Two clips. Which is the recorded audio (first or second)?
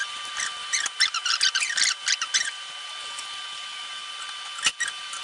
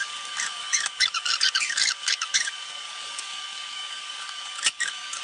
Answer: first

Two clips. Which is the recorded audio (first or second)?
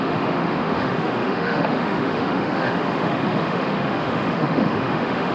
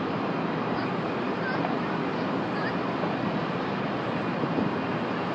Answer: second